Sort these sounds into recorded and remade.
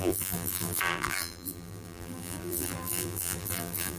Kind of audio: remade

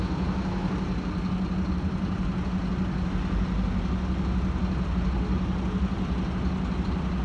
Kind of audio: recorded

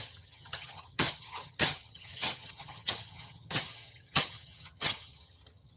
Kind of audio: remade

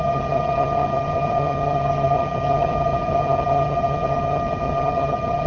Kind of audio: remade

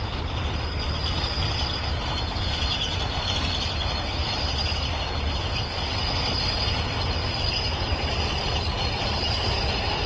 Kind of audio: recorded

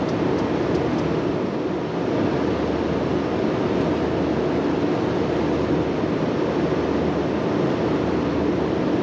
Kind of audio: recorded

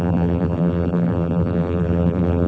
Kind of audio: remade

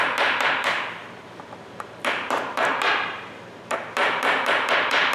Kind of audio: remade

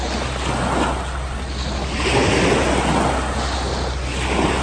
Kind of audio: recorded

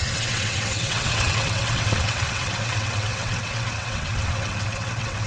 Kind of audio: remade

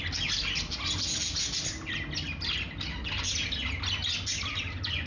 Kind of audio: recorded